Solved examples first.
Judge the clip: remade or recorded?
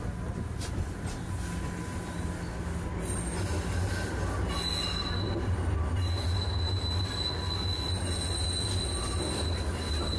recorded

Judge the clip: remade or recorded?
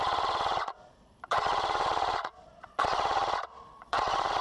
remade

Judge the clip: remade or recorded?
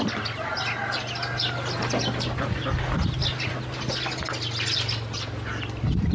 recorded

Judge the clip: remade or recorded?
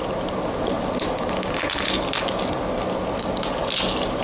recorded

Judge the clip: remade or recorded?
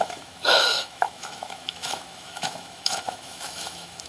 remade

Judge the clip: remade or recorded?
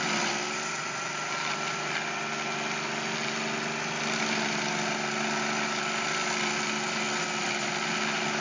recorded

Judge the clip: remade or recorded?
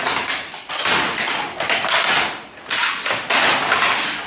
recorded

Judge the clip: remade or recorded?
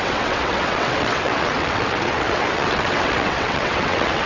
remade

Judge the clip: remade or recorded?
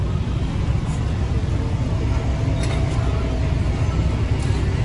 recorded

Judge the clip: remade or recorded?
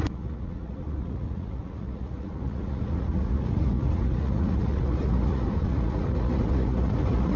remade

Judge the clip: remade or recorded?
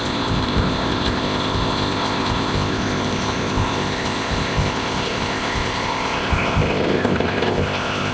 remade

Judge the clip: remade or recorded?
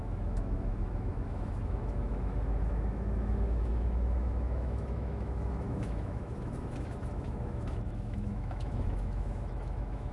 remade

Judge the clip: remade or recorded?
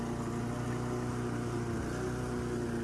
recorded